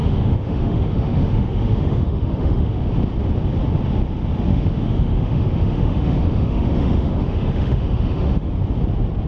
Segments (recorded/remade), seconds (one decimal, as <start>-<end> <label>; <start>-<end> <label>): 0.0-2.8 remade; 2.8-4.5 recorded; 4.5-8.5 remade; 8.5-9.3 recorded